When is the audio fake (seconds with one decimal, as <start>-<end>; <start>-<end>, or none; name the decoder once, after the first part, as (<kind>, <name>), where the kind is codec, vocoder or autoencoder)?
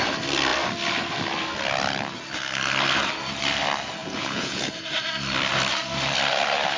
4.0-4.7 (vocoder, Vocos)